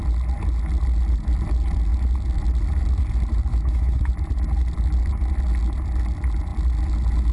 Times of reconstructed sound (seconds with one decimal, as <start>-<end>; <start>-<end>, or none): 3.5-4.1